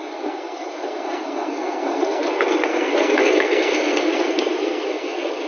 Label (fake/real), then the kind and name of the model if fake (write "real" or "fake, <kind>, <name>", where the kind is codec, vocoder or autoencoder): fake, codec, SNAC